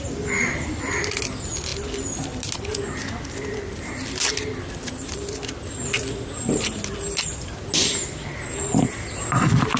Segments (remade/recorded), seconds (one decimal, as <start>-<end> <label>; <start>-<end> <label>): 0.0-9.8 recorded